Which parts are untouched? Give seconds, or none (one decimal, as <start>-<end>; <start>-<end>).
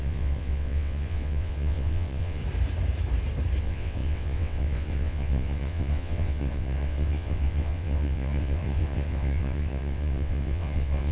2.4-3.6